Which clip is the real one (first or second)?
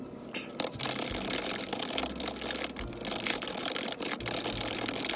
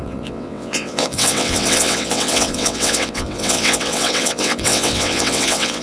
first